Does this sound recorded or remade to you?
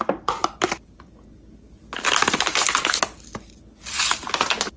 recorded